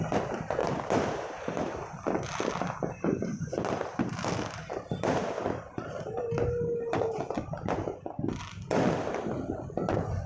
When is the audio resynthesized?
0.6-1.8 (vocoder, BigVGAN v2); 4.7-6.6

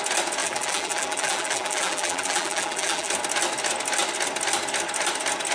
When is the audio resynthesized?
0.4-3.1 (vocoder, BigVGAN v2)

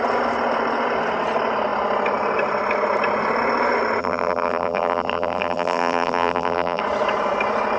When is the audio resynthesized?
4.0-6.8 (vocoder, BigVGAN v2)

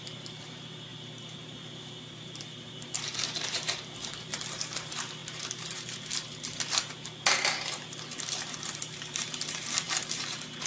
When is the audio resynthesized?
0.0-10.7 (vocoder, BigVGAN v2)